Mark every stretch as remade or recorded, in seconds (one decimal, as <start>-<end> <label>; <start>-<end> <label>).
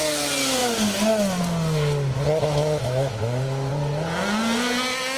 0.0-2.4 recorded; 2.4-3.7 remade; 3.7-5.2 recorded